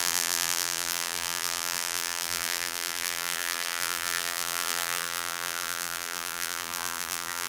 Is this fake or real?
fake